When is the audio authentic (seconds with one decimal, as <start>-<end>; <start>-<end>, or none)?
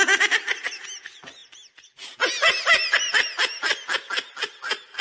0.0-5.0